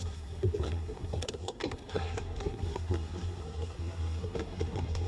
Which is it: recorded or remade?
remade